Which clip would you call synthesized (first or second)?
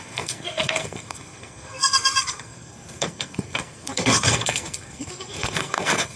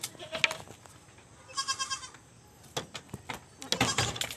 first